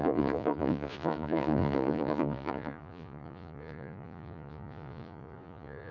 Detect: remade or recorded remade